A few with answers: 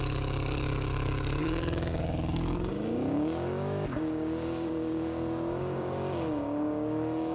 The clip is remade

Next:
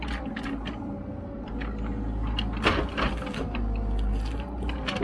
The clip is recorded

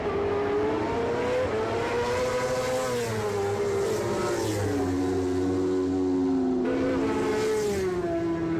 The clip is recorded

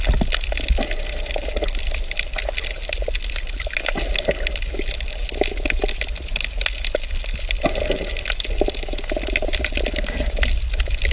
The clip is recorded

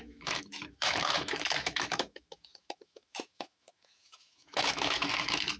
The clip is remade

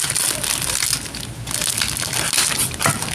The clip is recorded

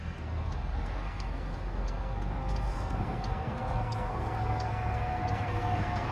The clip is remade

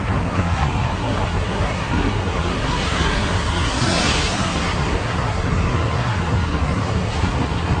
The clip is remade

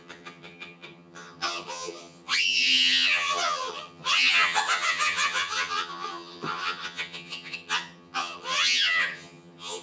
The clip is remade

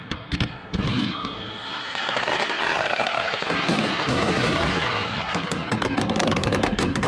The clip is remade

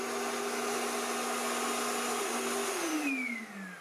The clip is recorded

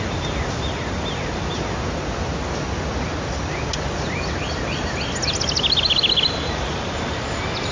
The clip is recorded